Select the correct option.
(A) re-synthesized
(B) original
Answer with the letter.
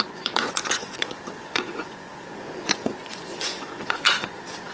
A